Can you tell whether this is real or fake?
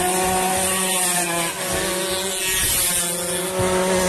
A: real